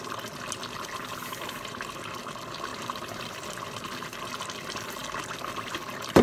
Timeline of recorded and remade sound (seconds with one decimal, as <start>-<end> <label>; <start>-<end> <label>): 0.0-2.7 recorded; 2.7-3.3 remade; 3.3-6.2 recorded